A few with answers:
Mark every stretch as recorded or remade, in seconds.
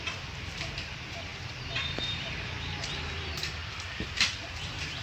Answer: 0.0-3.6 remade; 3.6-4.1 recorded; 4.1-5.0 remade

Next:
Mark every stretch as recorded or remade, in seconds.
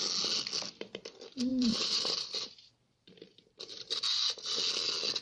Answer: 0.0-1.5 recorded; 1.5-4.6 remade; 4.6-5.2 recorded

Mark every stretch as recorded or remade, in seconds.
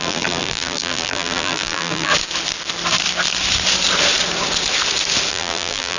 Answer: 0.0-2.1 remade; 2.1-5.3 recorded; 5.3-6.0 remade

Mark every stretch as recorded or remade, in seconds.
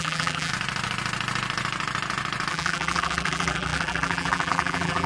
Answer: 0.0-0.5 remade; 0.5-2.5 recorded; 2.5-5.1 remade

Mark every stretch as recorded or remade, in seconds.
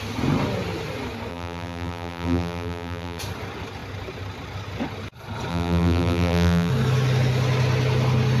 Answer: 0.0-1.3 recorded; 1.3-3.2 remade; 3.2-5.5 recorded; 5.5-6.7 remade; 6.7-8.4 recorded